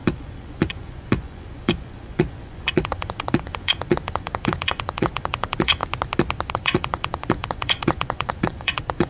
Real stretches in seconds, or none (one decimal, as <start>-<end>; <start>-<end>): 5.8-6.5